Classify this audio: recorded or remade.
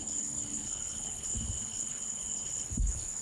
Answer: remade